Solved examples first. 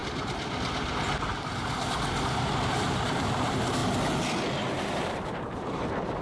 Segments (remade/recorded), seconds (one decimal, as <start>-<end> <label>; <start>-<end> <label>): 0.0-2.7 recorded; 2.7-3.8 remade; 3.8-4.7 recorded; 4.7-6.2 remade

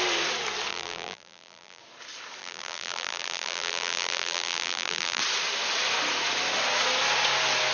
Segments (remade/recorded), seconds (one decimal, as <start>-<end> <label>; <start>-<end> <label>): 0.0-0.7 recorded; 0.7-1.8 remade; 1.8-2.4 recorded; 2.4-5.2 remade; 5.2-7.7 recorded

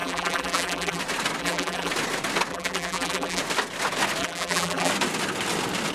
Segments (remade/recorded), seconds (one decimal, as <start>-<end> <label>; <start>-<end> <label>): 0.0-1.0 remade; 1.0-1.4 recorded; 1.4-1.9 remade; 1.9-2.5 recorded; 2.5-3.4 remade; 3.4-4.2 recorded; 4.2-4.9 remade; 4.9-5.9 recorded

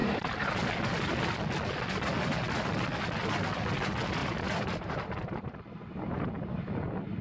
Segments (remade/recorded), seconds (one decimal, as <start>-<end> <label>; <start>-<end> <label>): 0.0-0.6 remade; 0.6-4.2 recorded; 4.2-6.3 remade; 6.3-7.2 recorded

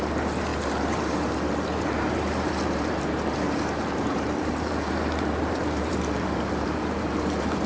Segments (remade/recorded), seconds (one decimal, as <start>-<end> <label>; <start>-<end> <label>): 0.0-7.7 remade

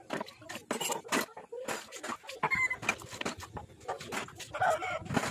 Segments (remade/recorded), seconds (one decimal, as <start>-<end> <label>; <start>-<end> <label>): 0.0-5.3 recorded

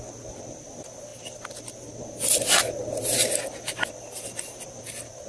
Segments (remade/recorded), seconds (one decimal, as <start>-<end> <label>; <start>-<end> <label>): 0.0-5.3 recorded

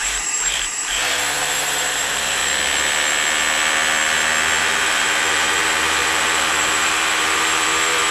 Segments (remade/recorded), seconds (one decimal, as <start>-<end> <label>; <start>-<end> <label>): 0.0-2.4 remade; 2.4-4.6 recorded; 4.6-8.1 remade